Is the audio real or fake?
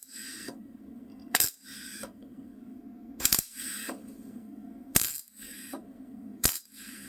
fake